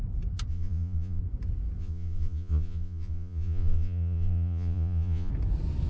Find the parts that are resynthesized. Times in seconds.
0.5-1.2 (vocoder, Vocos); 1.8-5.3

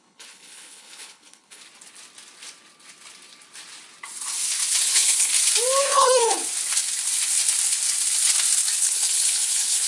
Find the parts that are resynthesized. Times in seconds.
0.0-1.6 (codec, HILCodec); 4.8-5.3; 5.8-6.4; 8.8-9.9

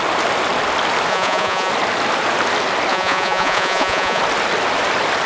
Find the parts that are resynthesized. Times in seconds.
1.1-1.7 (vocoder, Vocos); 2.9-4.2

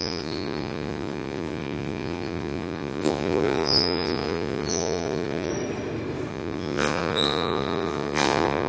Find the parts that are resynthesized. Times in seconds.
0.0-5.5 (vocoder, Vocos); 6.3-8.7

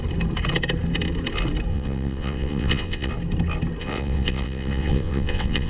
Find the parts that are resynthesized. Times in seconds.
1.7-3.1 (vocoder, WaveNeXt); 3.8-5.7

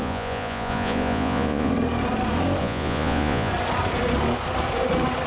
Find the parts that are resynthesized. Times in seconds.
0.0-1.7 (vocoder, Vocos); 2.6-3.5